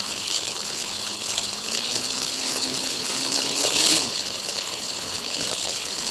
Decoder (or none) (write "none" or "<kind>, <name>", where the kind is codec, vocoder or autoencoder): codec, HILCodec